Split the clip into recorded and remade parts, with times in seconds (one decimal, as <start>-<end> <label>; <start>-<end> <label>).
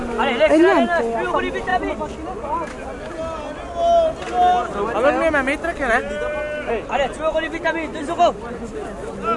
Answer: 0.0-9.4 recorded